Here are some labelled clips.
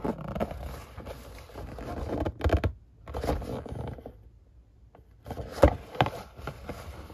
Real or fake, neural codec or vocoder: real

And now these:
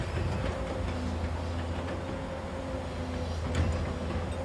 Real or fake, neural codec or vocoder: real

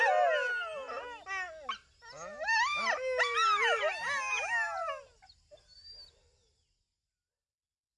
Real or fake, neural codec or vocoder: real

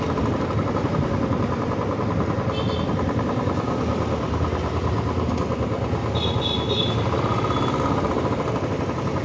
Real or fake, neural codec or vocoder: real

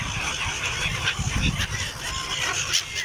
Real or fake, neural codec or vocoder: real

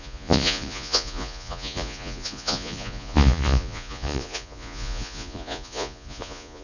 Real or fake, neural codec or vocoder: fake, vocoder, Vocos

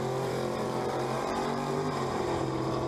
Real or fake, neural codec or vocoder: fake, vocoder, BigVGAN v2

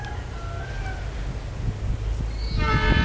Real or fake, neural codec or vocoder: real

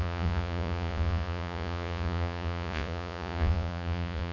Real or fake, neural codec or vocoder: fake, vocoder, Vocos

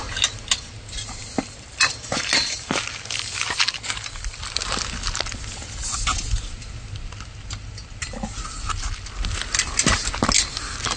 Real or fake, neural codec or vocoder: real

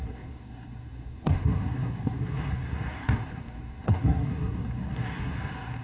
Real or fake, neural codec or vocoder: fake, codec, SNAC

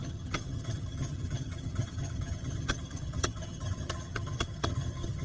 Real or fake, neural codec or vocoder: fake, vocoder, HiFi-GAN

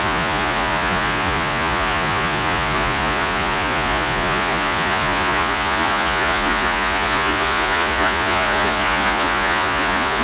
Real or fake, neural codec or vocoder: fake, vocoder, Vocos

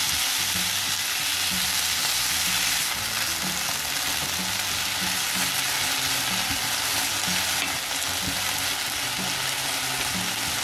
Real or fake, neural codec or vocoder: real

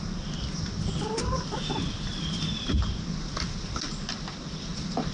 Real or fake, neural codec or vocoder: real